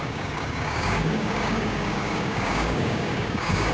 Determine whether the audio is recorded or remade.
remade